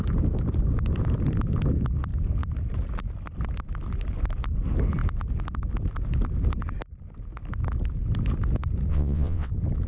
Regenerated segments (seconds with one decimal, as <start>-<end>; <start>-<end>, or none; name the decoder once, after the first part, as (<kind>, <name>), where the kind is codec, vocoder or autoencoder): 8.9-9.5 (vocoder, WaveNeXt)